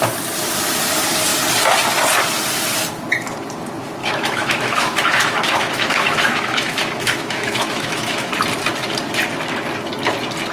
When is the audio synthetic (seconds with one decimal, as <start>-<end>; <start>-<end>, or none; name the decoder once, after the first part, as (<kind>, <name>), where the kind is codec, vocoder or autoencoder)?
4.0-8.3 (autoencoder, DAC-VAE)